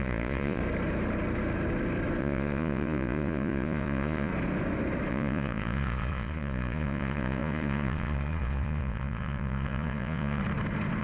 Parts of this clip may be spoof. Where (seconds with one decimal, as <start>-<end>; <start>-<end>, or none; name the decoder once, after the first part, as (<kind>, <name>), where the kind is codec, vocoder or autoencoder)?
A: 0.0-0.6 (vocoder, Vocos); 2.2-4.3; 5.1-10.4